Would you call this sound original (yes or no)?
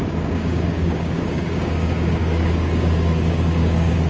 no